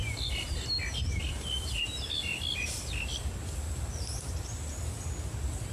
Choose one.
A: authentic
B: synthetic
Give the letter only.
A